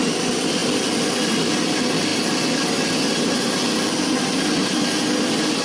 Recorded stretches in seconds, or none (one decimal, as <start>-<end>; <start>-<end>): 0.0-5.6